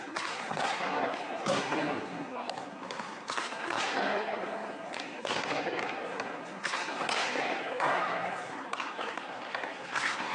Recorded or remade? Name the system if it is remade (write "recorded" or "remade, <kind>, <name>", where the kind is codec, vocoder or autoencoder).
remade, codec, SNAC